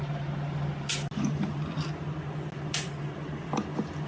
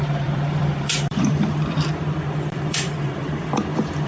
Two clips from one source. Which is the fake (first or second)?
second